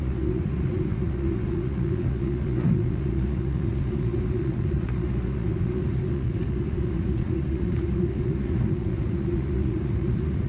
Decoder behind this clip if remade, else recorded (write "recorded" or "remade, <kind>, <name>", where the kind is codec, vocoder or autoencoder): remade, vocoder, Vocos